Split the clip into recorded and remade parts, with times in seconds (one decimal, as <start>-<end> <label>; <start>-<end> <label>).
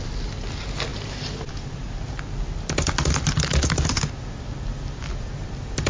0.0-5.9 recorded